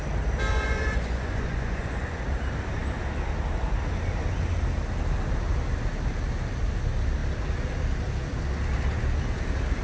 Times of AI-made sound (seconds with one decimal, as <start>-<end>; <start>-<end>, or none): 0.5-2.2